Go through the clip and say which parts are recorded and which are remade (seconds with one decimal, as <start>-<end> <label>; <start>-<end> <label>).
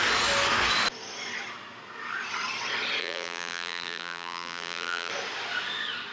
0.0-3.0 recorded; 3.0-5.1 remade; 5.1-6.1 recorded